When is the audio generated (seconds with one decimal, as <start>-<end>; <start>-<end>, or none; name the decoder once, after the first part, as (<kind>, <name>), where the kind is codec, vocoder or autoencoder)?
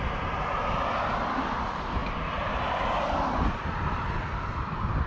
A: none